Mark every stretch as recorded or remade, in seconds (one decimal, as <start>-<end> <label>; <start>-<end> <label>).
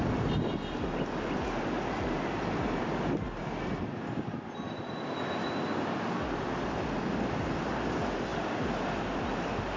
0.0-9.8 recorded